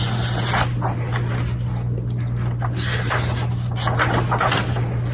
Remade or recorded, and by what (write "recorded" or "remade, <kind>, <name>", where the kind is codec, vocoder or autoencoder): recorded